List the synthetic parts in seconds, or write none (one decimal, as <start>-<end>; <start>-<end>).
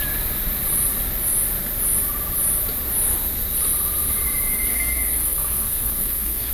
4.7-6.5